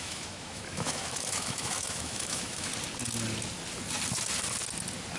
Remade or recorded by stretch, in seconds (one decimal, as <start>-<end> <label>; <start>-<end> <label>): 0.0-2.7 remade; 2.7-5.2 recorded